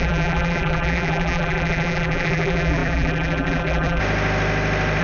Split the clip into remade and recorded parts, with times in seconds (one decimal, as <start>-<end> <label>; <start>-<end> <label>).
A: 0.0-4.0 remade; 4.0-5.0 recorded